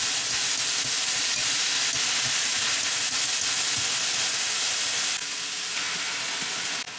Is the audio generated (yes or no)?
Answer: no